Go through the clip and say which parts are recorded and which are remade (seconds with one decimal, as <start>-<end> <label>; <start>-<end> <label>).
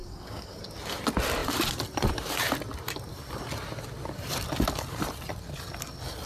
0.0-0.6 remade; 0.6-6.3 recorded